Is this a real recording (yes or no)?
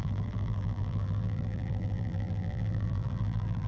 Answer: no